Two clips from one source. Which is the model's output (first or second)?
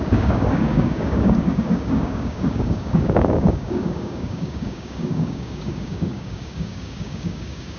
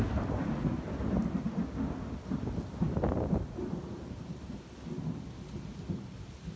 first